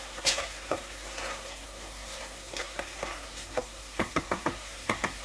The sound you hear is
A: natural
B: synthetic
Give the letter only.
B